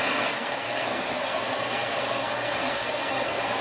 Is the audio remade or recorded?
remade